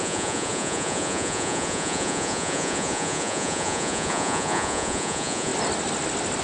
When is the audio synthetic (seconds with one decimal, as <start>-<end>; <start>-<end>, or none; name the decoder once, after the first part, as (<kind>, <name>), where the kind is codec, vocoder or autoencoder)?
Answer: 0.0-5.5 (vocoder, Vocos)